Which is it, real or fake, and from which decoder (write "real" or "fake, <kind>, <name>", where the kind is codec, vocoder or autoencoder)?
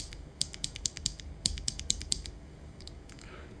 fake, codec, DAC